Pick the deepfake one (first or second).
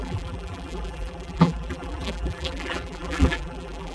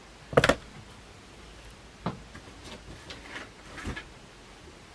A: first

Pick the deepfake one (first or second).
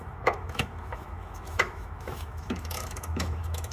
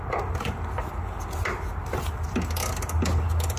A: first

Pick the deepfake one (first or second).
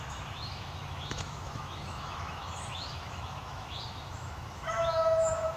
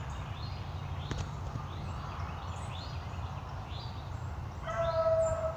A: first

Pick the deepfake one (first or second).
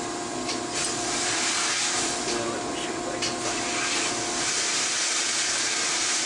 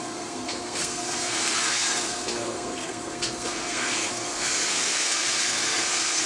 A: second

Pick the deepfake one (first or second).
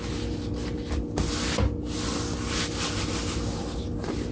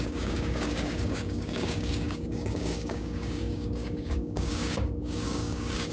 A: second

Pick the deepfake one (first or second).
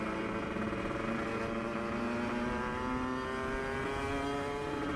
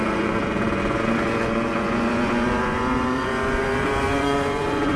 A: second